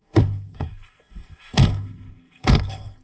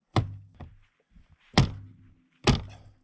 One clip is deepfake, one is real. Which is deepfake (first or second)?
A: first